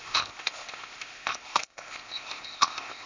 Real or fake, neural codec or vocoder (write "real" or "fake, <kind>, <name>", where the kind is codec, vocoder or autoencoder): fake, codec, ZipCodec